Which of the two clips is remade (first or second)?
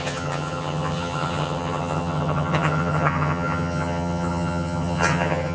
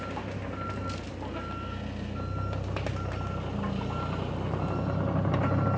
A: first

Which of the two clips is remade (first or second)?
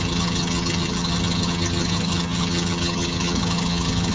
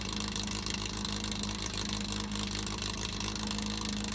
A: first